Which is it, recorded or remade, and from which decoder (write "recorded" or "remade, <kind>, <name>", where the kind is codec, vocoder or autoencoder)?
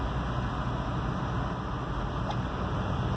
recorded